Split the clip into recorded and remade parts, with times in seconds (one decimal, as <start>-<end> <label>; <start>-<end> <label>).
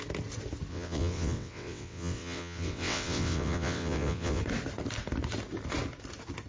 0.0-0.7 recorded; 0.7-4.4 remade; 4.4-6.5 recorded